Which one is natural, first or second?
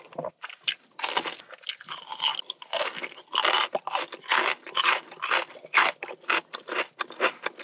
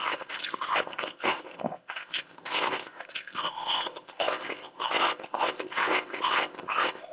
first